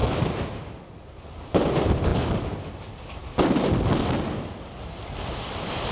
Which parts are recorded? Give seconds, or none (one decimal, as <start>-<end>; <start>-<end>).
0.0-5.9